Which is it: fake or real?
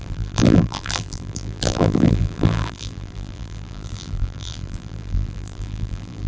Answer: fake